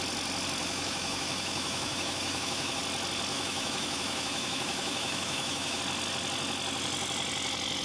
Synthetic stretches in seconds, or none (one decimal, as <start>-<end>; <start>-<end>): 0.6-2.8; 3.3-5.8